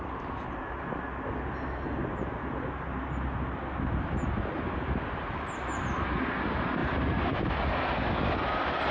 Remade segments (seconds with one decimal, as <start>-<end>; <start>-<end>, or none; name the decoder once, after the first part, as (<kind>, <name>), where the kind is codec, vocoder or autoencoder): none